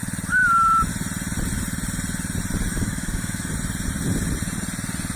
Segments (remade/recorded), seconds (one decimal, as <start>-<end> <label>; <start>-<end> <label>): 0.0-2.7 recorded; 2.7-3.5 remade; 3.5-5.2 recorded